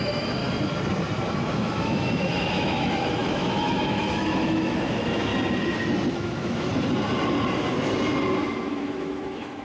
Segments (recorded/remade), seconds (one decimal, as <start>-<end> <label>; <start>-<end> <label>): 0.0-0.4 remade; 0.4-1.3 recorded; 1.3-5.3 remade; 5.3-6.1 recorded; 6.1-6.7 remade; 6.7-8.7 recorded; 8.7-9.6 remade